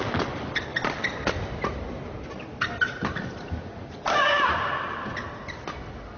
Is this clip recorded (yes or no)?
yes